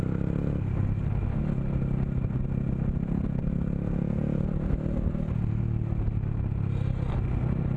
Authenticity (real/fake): real